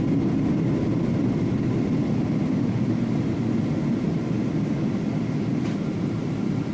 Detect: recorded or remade remade